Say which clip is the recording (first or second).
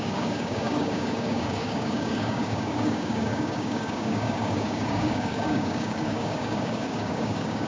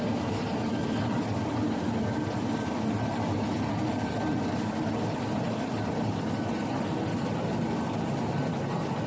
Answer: second